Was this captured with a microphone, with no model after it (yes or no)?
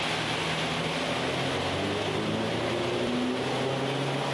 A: yes